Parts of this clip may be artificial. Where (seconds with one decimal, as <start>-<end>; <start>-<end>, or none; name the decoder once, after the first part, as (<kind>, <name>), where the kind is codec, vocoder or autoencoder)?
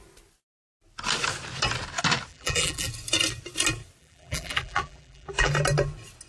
2.3-2.9 (vocoder, BigVGAN v2); 4.0-5.5